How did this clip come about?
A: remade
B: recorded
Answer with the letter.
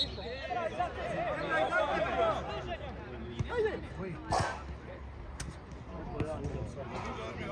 B